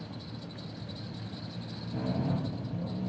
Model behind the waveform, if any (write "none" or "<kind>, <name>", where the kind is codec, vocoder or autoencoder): none